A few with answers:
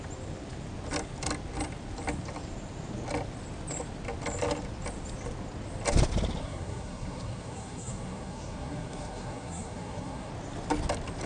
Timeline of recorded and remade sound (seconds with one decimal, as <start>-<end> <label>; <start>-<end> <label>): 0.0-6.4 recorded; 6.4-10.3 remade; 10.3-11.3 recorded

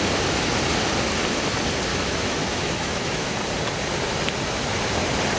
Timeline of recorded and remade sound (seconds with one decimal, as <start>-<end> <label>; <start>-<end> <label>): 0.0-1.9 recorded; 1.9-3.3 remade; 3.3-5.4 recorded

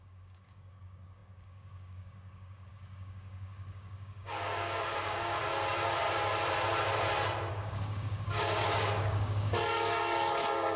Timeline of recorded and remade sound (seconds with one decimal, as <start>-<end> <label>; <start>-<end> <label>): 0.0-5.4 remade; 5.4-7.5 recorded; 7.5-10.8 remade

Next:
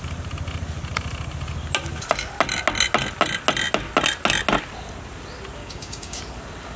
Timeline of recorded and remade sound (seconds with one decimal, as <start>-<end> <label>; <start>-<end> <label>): 0.0-5.6 recorded; 5.6-6.2 remade; 6.2-6.8 recorded